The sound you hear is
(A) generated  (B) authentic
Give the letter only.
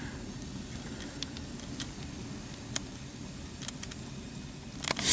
B